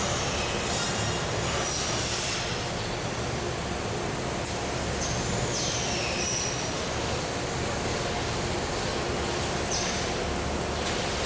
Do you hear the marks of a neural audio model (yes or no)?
no